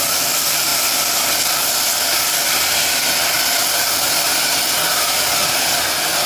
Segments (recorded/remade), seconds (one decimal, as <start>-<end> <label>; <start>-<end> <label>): 0.0-6.3 recorded